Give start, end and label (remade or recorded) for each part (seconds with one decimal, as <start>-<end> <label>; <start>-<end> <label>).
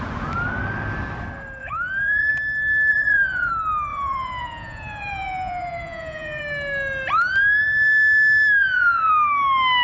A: 0.0-1.6 recorded; 1.6-2.3 remade; 2.3-2.9 recorded; 2.9-3.5 remade; 3.5-3.9 recorded; 3.9-6.4 remade; 6.4-8.6 recorded; 8.6-9.1 remade; 9.1-9.8 recorded